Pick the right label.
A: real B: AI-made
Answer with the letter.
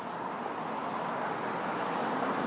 A